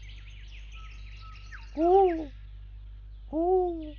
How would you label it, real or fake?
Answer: real